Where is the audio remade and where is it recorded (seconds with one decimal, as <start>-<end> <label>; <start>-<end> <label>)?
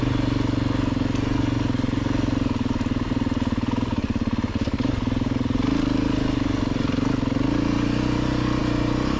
0.0-9.2 recorded